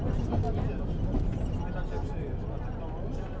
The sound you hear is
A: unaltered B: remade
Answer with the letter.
A